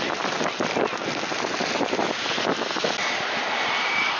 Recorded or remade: recorded